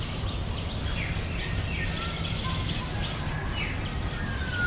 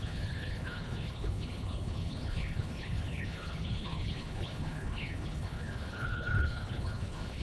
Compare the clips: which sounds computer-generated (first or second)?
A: second